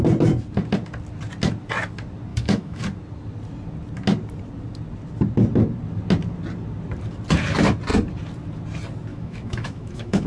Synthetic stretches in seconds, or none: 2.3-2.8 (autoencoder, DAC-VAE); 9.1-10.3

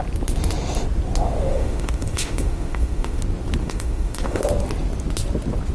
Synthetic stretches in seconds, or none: 1.5-3.2 (autoencoder, DAC-VAE); 3.6-4.4